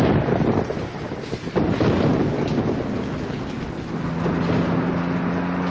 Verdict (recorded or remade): recorded